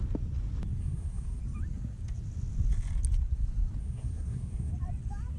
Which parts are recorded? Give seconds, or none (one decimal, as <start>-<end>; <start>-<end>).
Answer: 0.0-0.8; 1.4-3.8; 4.7-5.4